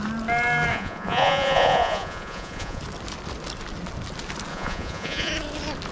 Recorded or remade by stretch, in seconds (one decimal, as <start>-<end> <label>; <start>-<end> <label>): 0.0-0.7 recorded; 0.7-2.8 remade; 2.8-4.5 recorded; 4.5-5.3 remade; 5.3-5.9 recorded